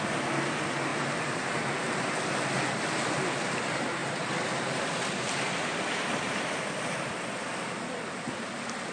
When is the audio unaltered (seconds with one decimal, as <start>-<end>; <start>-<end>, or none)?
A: 0.0-4.0; 6.8-8.9